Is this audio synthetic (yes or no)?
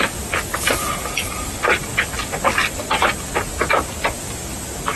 no